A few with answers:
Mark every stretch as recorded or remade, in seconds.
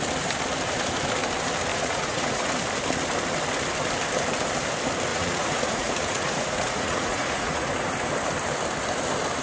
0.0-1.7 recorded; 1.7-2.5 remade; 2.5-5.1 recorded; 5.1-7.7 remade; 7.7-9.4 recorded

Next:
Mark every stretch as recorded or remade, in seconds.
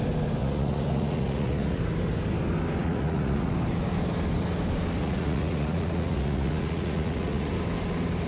0.0-0.4 recorded; 0.4-1.8 remade; 1.8-2.8 recorded; 2.8-3.5 remade; 3.5-5.0 recorded; 5.0-7.5 remade; 7.5-8.3 recorded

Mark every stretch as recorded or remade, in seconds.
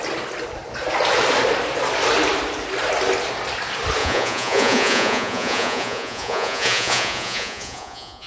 0.0-4.0 recorded; 4.0-8.3 remade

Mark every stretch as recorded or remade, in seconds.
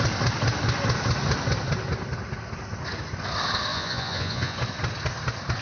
0.0-3.7 recorded; 3.7-4.6 remade; 4.6-5.6 recorded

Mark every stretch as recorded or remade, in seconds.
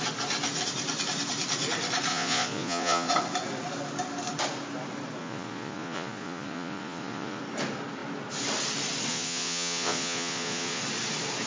0.0-2.1 recorded; 2.1-3.1 remade; 3.1-5.2 recorded; 5.2-7.4 remade; 7.4-9.1 recorded; 9.1-10.8 remade; 10.8-11.5 recorded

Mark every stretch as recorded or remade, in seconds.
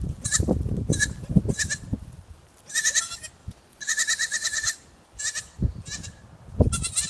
0.0-3.4 recorded; 3.4-5.2 remade; 5.2-7.1 recorded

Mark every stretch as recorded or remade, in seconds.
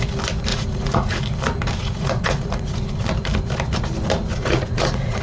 0.0-0.5 recorded; 0.5-1.2 remade; 1.2-1.8 recorded; 1.8-3.0 remade; 3.0-4.3 recorded; 4.3-5.2 remade